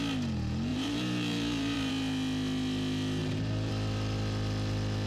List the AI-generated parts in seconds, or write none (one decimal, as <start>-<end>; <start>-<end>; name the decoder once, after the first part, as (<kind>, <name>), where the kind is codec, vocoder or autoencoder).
0.7-1.9 (vocoder, BigVGAN v2); 3.2-3.7